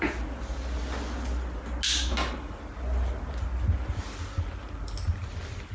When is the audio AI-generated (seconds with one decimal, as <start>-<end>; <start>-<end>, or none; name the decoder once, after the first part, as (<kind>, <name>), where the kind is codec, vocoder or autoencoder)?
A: none